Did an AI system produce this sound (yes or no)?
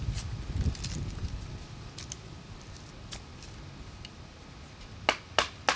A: no